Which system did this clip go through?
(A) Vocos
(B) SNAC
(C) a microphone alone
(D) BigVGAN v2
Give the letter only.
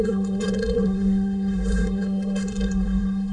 B